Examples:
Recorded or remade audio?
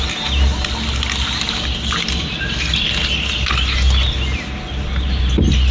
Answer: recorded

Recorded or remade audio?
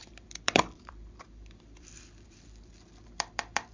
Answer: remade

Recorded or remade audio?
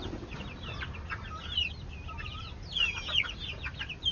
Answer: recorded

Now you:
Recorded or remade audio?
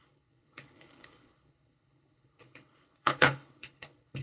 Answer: remade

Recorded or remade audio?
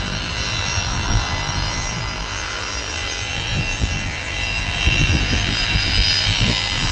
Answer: remade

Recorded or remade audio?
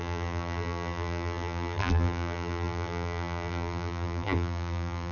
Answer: remade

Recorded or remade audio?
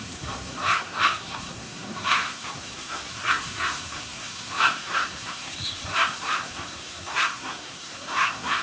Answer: remade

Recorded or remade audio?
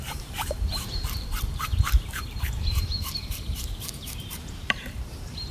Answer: remade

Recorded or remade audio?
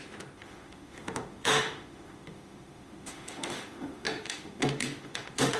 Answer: remade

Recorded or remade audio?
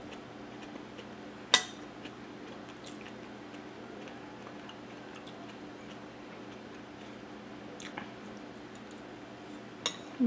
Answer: recorded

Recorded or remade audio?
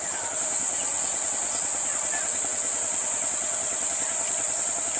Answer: recorded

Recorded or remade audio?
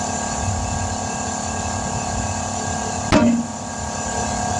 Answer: recorded